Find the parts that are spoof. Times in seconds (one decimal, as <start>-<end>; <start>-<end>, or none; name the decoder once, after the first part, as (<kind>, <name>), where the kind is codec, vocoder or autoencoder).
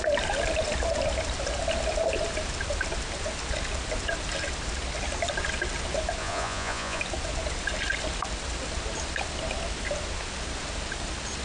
6.2-7.0 (vocoder, Vocos)